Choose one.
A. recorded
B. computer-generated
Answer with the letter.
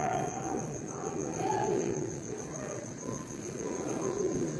B